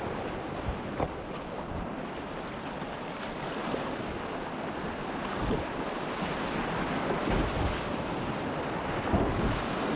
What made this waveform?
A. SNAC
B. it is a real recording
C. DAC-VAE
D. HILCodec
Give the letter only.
B